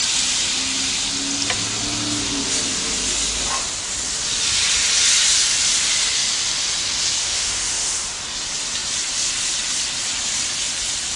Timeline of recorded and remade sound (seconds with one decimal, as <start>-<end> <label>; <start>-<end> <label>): 0.0-7.2 recorded; 7.2-8.2 remade; 8.2-11.2 recorded